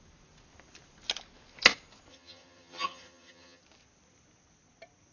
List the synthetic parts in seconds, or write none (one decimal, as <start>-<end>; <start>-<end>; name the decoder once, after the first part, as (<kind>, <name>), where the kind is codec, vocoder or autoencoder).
2.1-3.6 (vocoder, HiFi-GAN)